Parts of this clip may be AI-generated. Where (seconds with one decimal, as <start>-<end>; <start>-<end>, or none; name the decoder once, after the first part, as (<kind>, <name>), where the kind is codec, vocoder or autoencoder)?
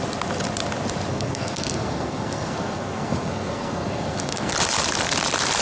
1.1-4.5 (codec, SNAC)